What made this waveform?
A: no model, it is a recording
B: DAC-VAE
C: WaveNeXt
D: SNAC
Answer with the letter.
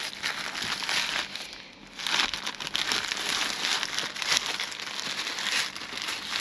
A